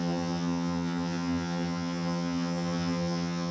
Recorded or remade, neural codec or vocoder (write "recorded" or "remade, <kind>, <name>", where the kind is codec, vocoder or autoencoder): remade, vocoder, HiFi-GAN